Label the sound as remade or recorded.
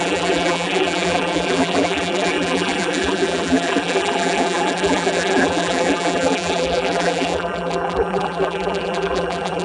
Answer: remade